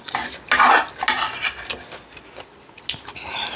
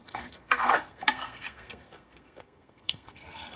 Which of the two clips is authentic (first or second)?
first